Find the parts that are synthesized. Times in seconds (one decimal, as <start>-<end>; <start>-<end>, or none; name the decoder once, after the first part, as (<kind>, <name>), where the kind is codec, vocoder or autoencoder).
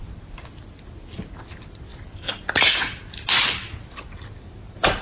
none